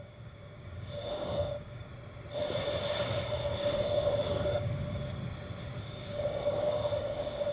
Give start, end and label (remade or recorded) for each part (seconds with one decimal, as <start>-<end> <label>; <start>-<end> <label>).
0.0-1.9 remade; 1.9-3.5 recorded; 3.5-5.2 remade; 5.2-5.8 recorded; 5.8-7.5 remade